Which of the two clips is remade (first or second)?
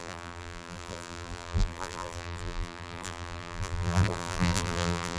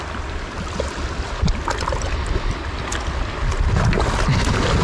first